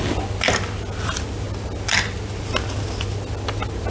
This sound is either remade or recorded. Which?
recorded